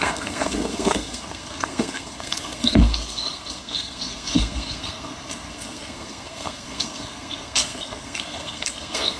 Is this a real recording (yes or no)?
no